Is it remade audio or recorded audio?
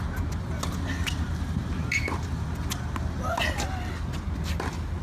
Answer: recorded